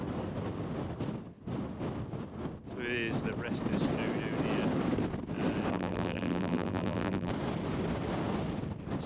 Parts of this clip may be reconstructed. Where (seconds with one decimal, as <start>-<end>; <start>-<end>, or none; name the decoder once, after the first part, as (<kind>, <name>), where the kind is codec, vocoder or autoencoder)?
5.7-7.3 (vocoder, BigVGAN v2)